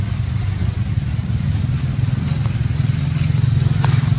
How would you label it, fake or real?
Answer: real